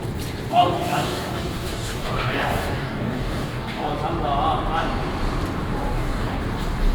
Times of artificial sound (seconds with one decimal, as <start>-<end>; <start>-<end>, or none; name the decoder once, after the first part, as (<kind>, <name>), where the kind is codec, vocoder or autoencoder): 0.5-3.9 (codec, DAC); 5.9-6.4

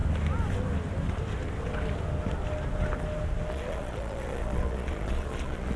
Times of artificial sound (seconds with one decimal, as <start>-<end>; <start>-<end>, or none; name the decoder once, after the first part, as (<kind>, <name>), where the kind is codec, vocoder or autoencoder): 3.5-5.8 (vocoder, Vocos)

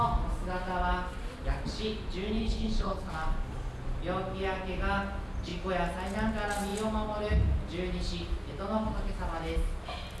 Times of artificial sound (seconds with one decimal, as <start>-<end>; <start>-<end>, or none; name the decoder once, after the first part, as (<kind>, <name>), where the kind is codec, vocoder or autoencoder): 2.4-3.1 (codec, HILCodec)

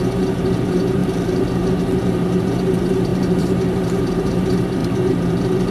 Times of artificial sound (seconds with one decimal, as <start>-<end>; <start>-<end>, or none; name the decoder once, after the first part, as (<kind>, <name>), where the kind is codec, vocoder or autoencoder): 0.0-5.7 (vocoder, BigVGAN v2)

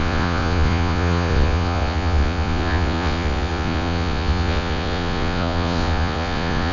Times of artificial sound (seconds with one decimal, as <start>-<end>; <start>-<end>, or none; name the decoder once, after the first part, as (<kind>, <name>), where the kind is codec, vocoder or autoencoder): 0.0-6.7 (vocoder, Vocos)